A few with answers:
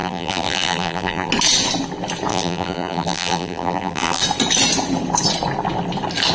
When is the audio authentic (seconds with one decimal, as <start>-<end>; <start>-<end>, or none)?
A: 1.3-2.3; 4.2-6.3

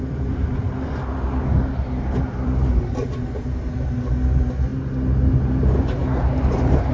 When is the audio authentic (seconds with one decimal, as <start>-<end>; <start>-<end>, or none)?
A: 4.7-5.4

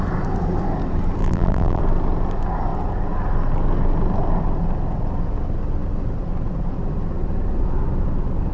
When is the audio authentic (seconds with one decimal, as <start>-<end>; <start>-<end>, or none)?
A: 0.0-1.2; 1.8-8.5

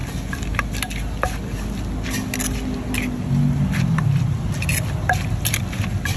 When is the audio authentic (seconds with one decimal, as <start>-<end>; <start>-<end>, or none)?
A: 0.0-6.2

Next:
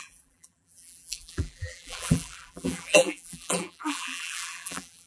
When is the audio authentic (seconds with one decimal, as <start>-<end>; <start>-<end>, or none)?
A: none